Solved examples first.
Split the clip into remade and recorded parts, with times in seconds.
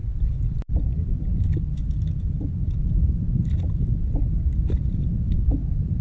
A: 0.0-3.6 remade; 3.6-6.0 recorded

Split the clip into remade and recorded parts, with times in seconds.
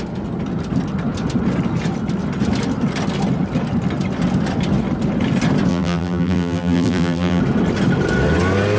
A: 0.0-5.7 recorded; 5.7-7.4 remade; 7.4-8.8 recorded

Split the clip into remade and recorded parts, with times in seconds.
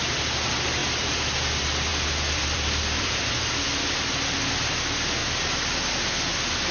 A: 0.0-0.8 recorded; 0.8-1.3 remade; 1.3-1.9 recorded; 1.9-3.3 remade; 3.3-6.7 recorded